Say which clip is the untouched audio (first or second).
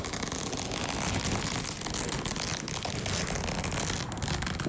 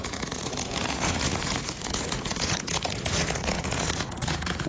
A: first